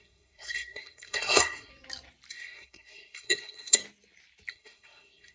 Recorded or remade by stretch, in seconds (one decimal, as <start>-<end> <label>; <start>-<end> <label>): 0.0-1.7 remade; 1.7-2.3 recorded; 2.3-3.8 remade; 3.8-4.5 recorded; 4.5-5.3 remade